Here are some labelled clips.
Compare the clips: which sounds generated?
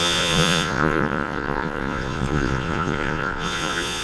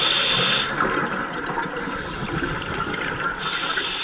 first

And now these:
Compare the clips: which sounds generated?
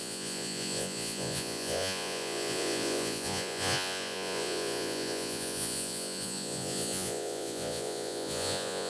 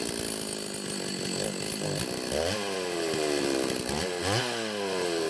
first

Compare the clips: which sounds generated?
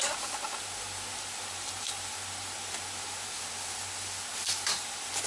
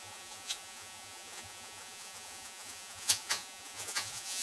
second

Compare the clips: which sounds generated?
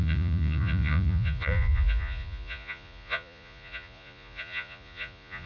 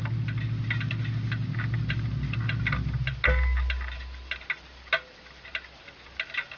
first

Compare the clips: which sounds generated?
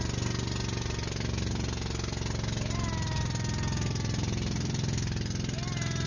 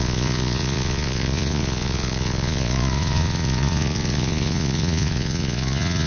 second